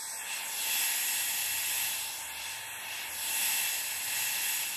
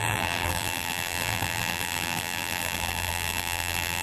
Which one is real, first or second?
first